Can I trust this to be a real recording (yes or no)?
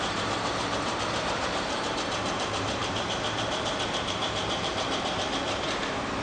no